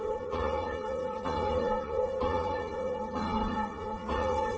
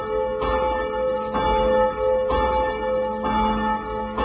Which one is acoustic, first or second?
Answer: second